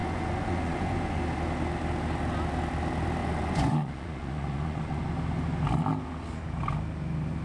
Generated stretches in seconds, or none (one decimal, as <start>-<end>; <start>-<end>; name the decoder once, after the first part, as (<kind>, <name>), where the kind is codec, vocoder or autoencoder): 0.0-1.2 (vocoder, Vocos); 3.2-5.1